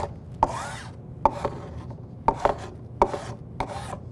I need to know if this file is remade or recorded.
recorded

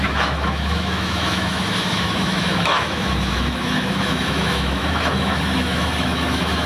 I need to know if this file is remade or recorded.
remade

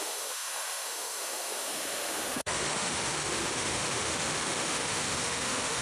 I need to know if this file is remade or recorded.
remade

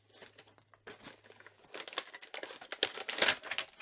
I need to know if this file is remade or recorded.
recorded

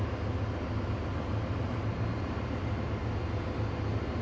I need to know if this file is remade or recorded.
recorded